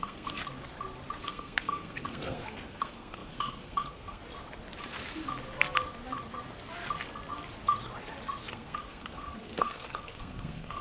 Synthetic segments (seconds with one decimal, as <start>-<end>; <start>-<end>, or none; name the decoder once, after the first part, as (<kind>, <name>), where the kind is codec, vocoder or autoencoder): 0.0-0.4 (codec, SNAC); 1.2-4.2; 8.5-10.8